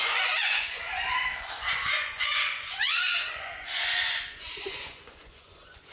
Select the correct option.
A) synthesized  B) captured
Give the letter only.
A